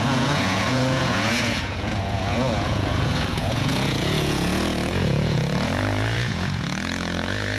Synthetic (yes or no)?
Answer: yes